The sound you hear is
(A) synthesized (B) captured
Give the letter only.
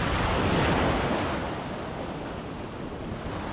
B